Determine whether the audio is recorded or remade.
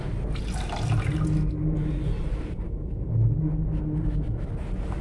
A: recorded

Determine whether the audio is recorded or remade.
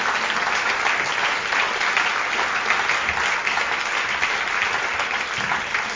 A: recorded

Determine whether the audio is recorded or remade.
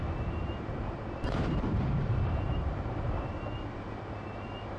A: remade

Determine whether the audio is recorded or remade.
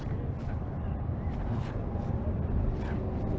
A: recorded